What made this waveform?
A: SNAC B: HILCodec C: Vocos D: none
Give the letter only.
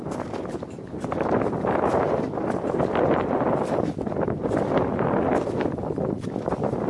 D